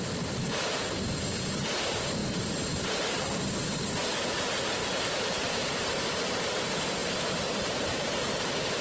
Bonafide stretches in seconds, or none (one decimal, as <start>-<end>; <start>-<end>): 0.0-2.2; 2.8-4.8; 5.5-7.0; 8.1-8.8